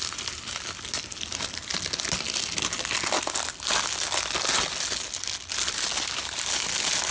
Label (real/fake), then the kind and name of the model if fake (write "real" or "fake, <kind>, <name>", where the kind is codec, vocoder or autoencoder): real